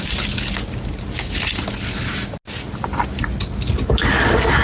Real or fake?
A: real